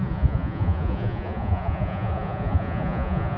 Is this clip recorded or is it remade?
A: remade